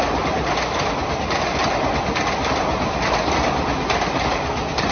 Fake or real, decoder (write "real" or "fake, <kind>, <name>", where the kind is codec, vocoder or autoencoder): real